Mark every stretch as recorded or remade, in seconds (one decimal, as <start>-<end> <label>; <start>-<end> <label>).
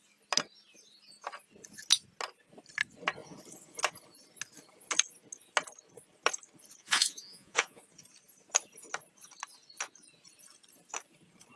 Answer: 0.0-6.8 recorded; 6.8-7.8 remade; 7.8-11.6 recorded